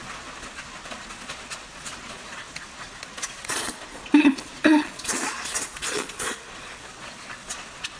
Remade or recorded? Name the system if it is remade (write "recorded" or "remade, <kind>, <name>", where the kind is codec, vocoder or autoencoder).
remade, vocoder, Vocos